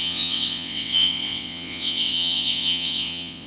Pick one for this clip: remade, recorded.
remade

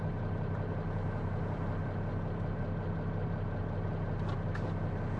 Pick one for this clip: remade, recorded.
recorded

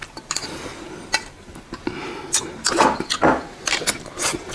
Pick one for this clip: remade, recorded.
recorded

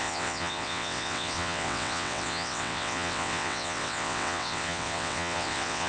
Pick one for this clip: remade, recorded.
remade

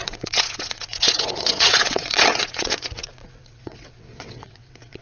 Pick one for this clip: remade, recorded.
remade